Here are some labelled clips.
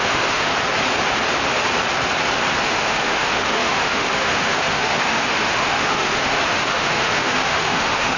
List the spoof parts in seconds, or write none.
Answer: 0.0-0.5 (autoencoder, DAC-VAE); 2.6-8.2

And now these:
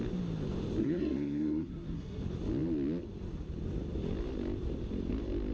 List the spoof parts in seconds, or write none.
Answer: 0.8-2.2 (codec, SNAC)

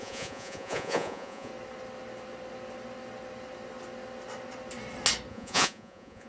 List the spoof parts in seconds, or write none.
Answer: 0.0-1.5 (vocoder, Vocos); 5.3-6.3

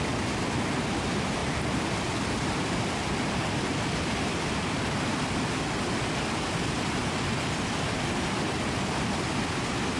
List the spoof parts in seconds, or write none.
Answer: 1.4-5.3 (vocoder, BigVGAN v2)

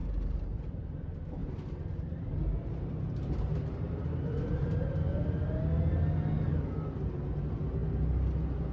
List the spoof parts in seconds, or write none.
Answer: 0.0-0.8 (vocoder, BigVGAN v2); 1.4-5.6

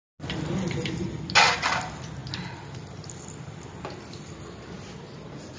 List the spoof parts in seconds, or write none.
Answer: none

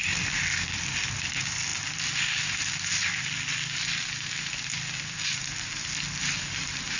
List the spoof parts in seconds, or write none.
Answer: none

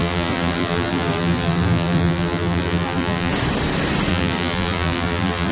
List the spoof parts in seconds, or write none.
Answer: 0.0-3.3 (vocoder, BigVGAN v2); 4.1-5.5